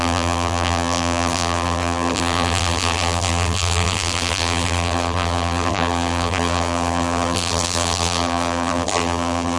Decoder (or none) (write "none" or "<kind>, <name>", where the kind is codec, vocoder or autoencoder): vocoder, BigVGAN v2